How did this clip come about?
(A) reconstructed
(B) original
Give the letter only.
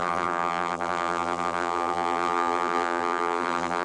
A